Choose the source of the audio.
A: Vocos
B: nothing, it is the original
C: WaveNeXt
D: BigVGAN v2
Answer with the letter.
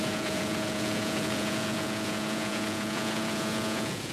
A